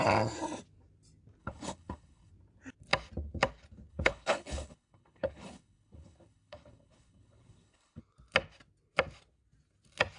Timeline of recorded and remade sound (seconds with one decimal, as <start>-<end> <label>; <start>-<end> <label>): 0.0-1.4 recorded; 1.4-2.3 remade; 2.3-3.9 recorded; 3.9-8.0 remade; 8.0-10.2 recorded